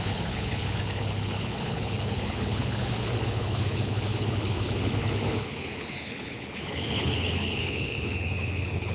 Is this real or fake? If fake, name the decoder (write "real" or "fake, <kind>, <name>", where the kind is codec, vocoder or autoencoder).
fake, codec, HILCodec